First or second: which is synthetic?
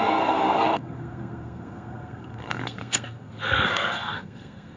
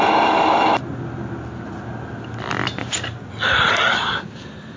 first